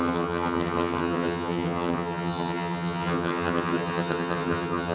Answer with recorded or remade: remade